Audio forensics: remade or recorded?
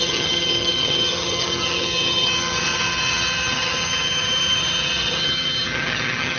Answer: remade